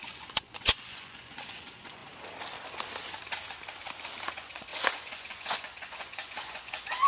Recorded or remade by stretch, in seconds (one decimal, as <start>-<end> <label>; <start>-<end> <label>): 0.0-2.0 remade; 2.0-4.3 recorded; 4.3-7.1 remade